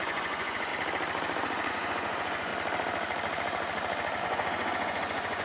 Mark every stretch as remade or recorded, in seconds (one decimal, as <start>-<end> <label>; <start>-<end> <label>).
0.0-0.7 remade; 0.7-1.7 recorded; 1.7-2.5 remade; 2.5-4.2 recorded; 4.2-5.4 remade